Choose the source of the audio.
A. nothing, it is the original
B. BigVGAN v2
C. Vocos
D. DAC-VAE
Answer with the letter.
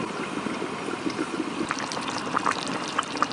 B